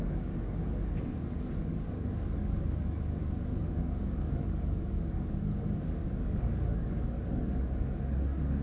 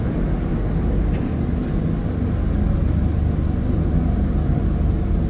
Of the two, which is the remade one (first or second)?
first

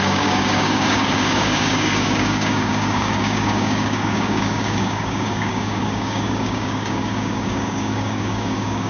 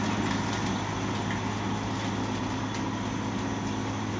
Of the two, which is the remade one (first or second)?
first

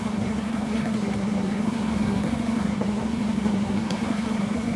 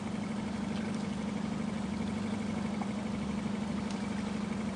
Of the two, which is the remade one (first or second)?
first